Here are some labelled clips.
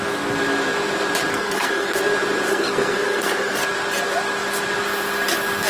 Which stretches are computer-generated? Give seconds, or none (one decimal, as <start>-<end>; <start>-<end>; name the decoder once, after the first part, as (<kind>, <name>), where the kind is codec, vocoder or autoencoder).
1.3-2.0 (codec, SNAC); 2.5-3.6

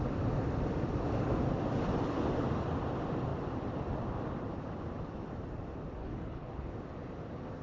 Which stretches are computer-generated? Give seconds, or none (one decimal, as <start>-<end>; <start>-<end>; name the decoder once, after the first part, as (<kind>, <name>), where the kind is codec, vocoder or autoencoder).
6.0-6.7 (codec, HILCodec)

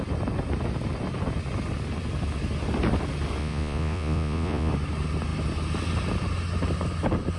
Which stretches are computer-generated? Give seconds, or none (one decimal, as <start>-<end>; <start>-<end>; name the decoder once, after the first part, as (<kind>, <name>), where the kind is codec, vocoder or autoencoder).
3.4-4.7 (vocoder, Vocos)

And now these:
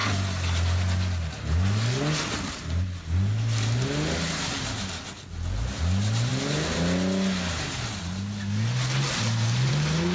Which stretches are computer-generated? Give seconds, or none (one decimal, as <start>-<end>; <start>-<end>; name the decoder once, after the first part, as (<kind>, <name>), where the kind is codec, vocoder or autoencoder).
none

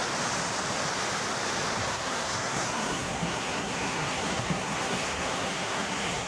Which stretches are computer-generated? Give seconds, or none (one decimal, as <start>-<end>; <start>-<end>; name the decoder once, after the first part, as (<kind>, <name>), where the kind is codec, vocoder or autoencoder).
1.8-6.3 (codec, SNAC)

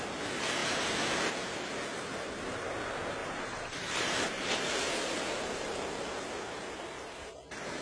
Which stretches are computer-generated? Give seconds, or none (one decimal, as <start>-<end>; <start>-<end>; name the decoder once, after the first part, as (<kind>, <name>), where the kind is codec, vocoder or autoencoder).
3.2-4.7 (vocoder, BigVGAN v2)